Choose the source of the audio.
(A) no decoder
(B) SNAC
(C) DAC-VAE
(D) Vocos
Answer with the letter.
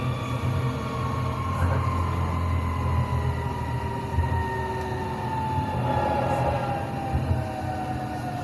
A